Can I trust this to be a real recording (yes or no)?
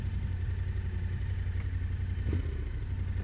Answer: yes